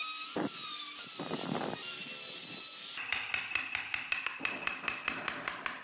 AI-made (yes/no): no